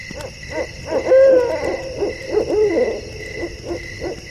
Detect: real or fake real